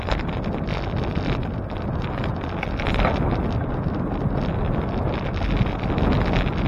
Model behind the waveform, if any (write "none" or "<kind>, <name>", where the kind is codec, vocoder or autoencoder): none